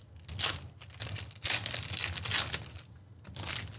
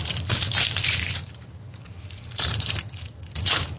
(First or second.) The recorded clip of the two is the first